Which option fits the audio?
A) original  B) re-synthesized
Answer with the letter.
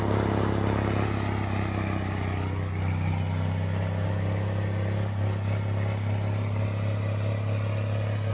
A